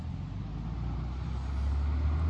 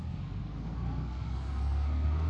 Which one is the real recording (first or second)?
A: first